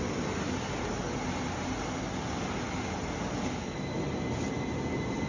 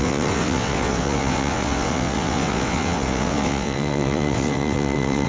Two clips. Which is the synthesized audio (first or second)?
second